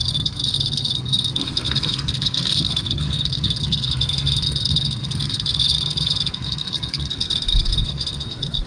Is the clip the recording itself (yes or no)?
no